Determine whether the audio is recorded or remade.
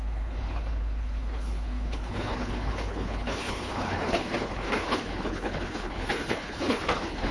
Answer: remade